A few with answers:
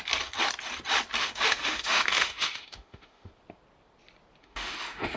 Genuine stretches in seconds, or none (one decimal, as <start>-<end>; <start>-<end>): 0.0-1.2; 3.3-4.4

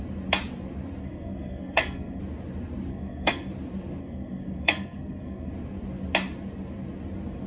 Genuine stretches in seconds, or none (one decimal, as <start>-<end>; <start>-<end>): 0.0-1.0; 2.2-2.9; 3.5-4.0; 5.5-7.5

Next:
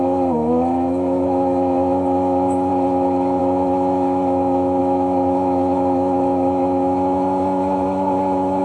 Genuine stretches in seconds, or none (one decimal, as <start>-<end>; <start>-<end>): 2.7-3.4